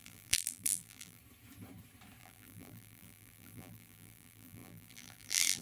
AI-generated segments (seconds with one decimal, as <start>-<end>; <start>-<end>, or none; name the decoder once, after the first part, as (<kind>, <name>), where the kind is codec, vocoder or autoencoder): 0.0-1.2 (vocoder, BigVGAN v2); 2.2-5.6